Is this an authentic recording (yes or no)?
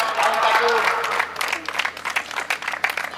yes